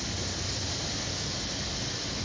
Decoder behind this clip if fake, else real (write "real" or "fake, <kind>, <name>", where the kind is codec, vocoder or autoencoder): real